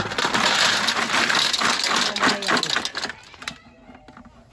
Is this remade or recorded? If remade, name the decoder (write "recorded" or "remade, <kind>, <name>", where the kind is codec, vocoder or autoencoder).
recorded